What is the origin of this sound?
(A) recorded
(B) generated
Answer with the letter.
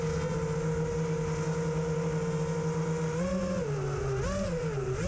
A